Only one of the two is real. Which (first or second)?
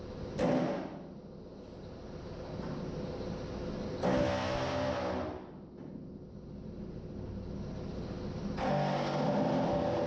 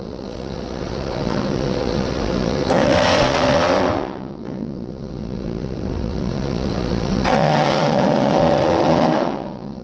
first